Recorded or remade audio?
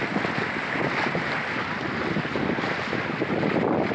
recorded